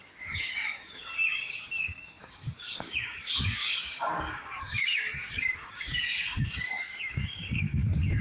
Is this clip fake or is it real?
fake